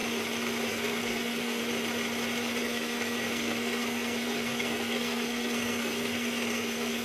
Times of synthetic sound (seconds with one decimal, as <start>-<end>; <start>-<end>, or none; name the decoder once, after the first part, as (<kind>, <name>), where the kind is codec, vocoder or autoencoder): 0.7-1.6 (codec, SNAC); 2.6-7.0